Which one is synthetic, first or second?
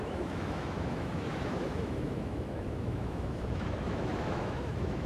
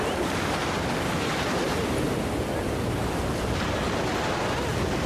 first